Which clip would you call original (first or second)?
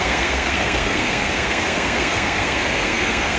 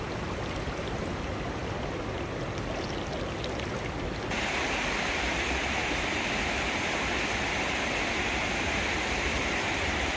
second